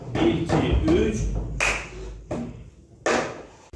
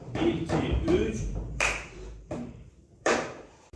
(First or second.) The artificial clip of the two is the second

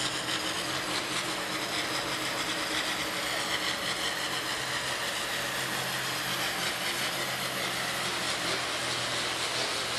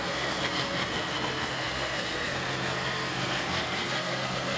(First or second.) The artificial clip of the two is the second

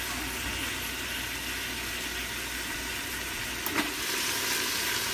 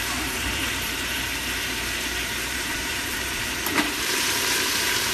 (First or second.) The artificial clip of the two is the second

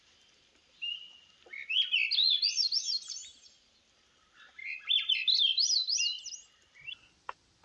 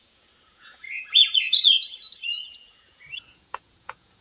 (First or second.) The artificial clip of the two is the second